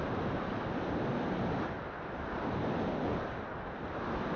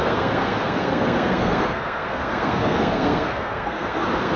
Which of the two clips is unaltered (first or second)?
first